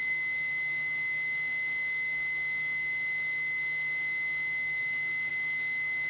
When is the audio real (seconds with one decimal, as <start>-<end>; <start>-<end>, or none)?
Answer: none